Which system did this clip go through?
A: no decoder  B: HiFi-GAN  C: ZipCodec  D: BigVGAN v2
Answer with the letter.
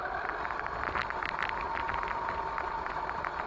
A